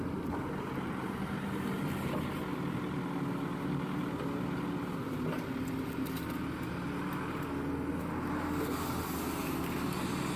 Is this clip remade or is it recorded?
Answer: recorded